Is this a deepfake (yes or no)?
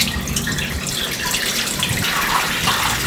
no